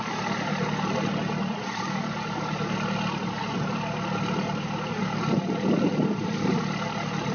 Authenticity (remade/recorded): recorded